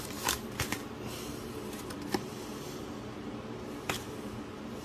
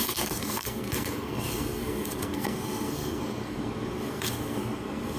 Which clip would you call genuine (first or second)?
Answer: first